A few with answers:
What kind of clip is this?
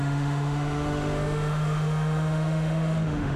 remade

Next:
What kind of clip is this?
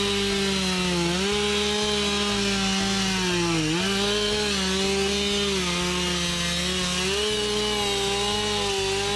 recorded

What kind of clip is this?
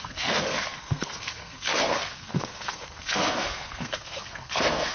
remade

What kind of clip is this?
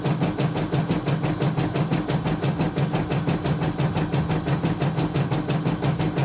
recorded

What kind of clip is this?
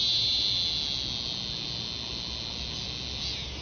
recorded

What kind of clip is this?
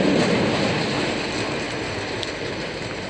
recorded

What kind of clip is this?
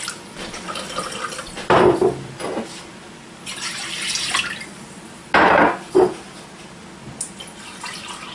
recorded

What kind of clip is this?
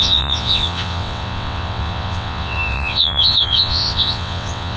remade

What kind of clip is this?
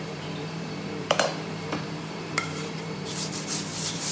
remade